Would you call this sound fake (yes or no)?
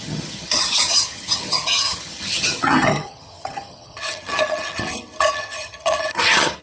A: yes